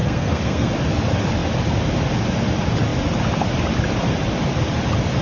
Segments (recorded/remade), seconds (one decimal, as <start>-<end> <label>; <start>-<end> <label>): 0.0-0.7 remade; 0.7-5.2 recorded